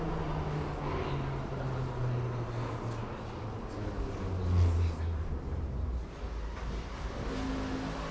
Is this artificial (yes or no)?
no